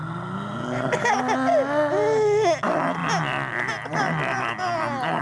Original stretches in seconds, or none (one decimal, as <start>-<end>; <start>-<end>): 0.0-5.2